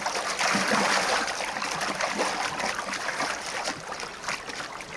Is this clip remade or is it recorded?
recorded